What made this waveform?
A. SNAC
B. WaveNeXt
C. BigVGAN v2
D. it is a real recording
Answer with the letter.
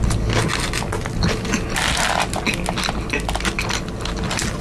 D